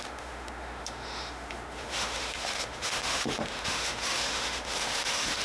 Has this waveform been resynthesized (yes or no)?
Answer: yes